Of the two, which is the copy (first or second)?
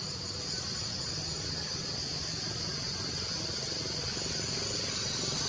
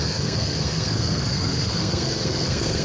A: second